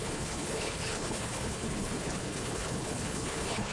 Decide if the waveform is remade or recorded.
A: remade